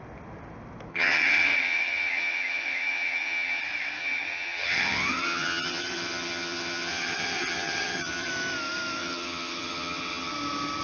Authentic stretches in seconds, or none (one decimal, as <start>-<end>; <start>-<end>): 0.0-0.9; 3.6-4.0; 8.3-9.0; 10.3-10.8